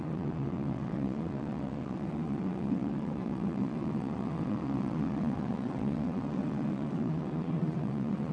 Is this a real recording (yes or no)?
no